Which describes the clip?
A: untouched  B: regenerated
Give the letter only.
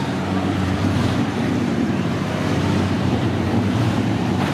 B